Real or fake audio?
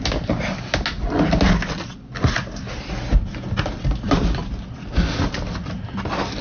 real